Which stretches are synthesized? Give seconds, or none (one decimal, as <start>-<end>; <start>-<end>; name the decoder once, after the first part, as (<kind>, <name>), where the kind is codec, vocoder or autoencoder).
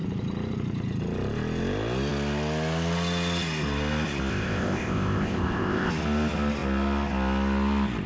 4.3-5.9 (codec, ZipCodec)